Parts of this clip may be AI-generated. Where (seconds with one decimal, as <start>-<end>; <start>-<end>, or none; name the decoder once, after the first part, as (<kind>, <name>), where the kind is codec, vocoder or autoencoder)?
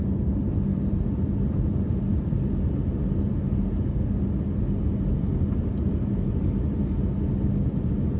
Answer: none